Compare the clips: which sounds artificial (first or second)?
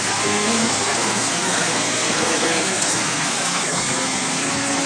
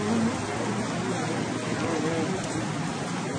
first